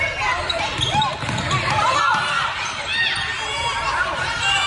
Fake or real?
real